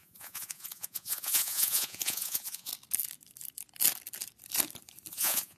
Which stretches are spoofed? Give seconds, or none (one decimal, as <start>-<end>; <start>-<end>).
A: 0.0-2.7; 5.1-5.6